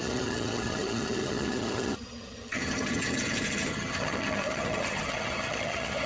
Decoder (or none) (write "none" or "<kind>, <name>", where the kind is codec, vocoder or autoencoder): vocoder, HiFi-GAN